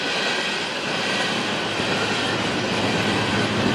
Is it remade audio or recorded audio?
recorded